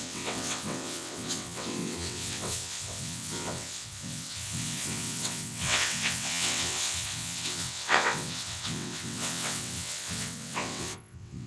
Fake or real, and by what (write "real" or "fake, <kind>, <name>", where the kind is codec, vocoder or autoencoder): fake, vocoder, WaveNeXt